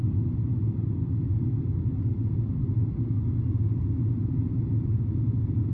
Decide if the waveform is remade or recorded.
recorded